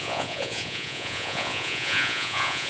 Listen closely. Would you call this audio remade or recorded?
remade